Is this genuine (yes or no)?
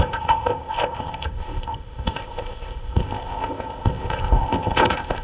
no